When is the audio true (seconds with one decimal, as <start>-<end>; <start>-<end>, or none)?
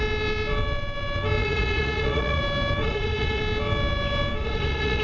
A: 0.0-1.4; 2.4-2.8; 3.4-4.4